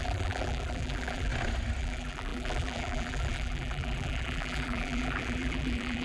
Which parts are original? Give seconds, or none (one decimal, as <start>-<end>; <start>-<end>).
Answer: 1.3-1.8